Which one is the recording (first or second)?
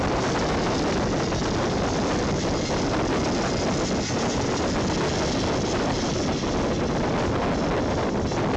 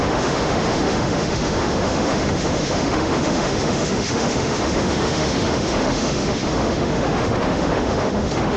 first